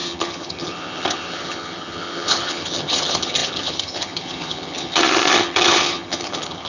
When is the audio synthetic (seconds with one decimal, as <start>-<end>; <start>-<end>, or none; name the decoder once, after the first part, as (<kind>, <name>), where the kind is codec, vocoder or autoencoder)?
0.0-6.7 (vocoder, HiFi-GAN)